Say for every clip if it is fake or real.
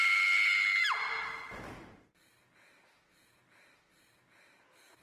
real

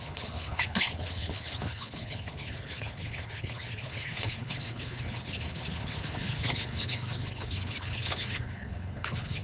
fake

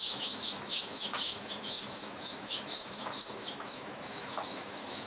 fake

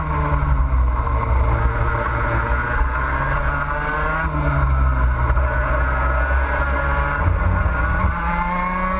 real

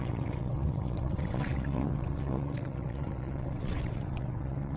fake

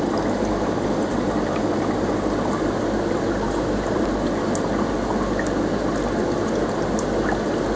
real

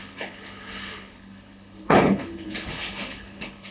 fake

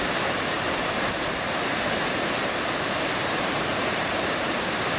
fake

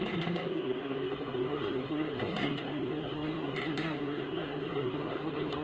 fake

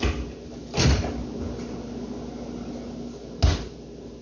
real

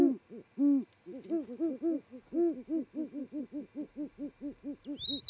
real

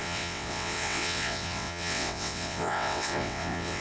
fake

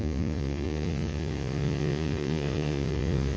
fake